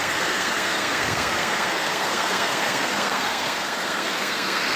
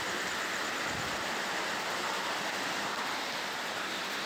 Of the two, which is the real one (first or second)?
second